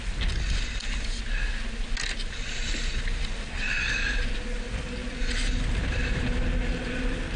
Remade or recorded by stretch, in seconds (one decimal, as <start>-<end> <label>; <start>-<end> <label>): 0.0-7.4 recorded